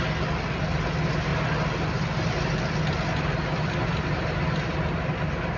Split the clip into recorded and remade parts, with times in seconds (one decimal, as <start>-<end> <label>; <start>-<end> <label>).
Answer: 0.0-5.6 recorded